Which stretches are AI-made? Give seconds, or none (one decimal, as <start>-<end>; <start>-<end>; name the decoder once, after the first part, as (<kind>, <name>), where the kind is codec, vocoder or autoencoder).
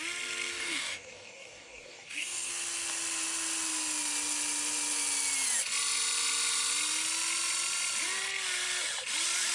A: 0.5-2.5 (codec, DAC)